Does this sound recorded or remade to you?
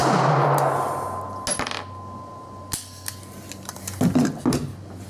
recorded